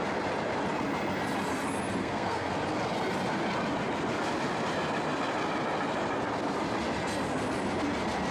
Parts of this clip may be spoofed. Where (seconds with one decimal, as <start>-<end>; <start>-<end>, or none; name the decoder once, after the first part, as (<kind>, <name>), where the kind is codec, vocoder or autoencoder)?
2.0-2.5 (codec, SNAC)